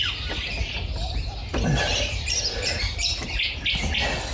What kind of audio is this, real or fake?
real